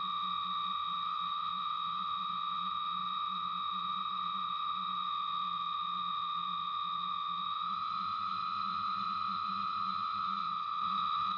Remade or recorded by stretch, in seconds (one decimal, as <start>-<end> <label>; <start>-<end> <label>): 0.0-11.4 remade